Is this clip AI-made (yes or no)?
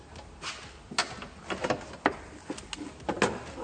no